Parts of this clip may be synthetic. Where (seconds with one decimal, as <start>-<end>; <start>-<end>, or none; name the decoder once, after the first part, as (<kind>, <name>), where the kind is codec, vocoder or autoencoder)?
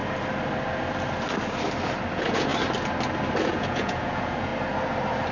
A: 2.1-2.5 (vocoder, Vocos); 3.4-4.5